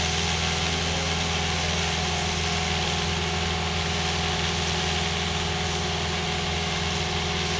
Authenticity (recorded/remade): recorded